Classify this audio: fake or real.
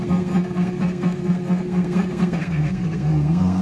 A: fake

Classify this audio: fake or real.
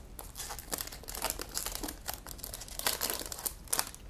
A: real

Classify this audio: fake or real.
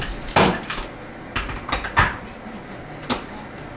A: real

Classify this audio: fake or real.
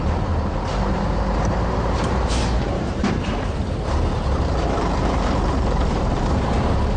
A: fake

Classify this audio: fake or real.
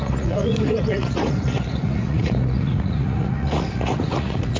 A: fake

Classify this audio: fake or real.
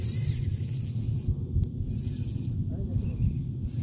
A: real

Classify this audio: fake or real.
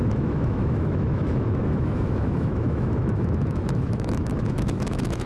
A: fake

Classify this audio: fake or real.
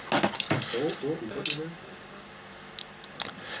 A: real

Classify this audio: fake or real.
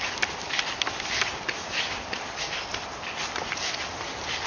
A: real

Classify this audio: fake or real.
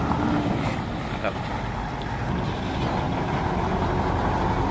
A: real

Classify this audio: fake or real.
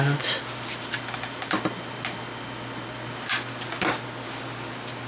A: real